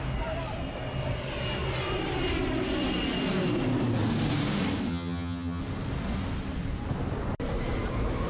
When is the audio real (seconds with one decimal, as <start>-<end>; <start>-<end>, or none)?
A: 0.0-4.9; 5.6-8.3